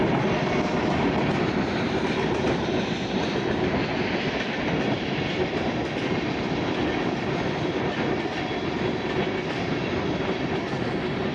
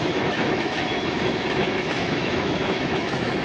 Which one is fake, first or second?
second